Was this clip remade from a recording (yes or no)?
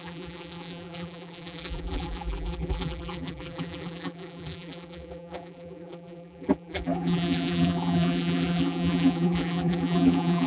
yes